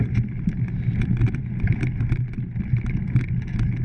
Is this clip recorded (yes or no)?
yes